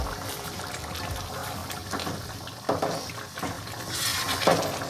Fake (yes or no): no